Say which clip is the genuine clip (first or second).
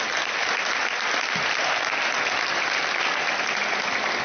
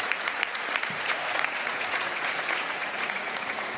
first